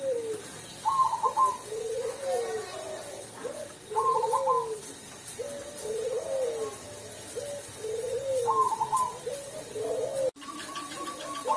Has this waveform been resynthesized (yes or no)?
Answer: no